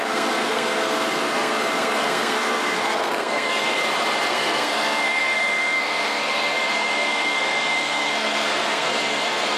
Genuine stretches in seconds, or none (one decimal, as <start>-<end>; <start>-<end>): 3.8-4.3